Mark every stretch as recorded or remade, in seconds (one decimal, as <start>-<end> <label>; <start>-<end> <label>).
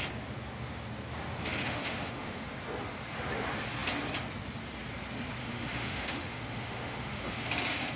0.0-1.6 recorded; 1.6-2.4 remade; 2.4-5.4 recorded; 5.4-7.5 remade; 7.5-8.0 recorded